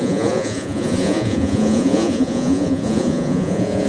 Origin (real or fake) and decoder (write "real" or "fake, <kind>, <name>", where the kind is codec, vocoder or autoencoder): fake, vocoder, Vocos